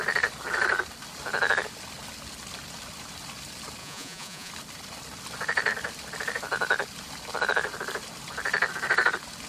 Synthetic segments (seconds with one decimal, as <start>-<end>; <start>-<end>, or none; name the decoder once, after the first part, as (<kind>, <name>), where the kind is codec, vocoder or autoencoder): 3.8-4.5 (vocoder, Vocos)